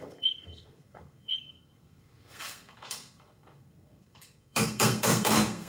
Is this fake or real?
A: fake